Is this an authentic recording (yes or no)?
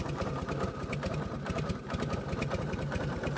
yes